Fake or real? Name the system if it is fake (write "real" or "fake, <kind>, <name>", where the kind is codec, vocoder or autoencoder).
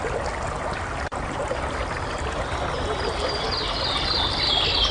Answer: real